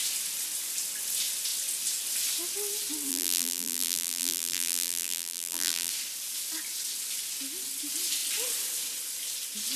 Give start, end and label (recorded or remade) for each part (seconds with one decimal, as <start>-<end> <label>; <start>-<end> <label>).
0.0-3.1 recorded; 3.1-5.9 remade; 5.9-9.8 recorded